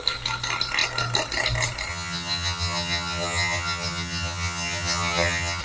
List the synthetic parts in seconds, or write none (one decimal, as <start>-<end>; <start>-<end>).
1.9-5.6